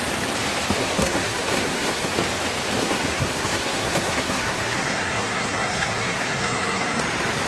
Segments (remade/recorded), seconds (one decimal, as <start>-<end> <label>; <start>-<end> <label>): 0.0-0.8 recorded; 0.8-2.1 remade; 2.1-2.8 recorded; 2.8-7.0 remade; 7.0-7.5 recorded